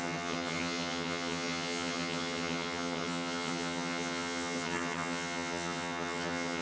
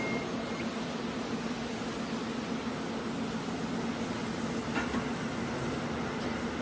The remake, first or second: first